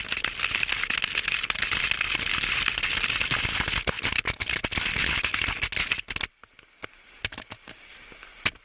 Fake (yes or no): no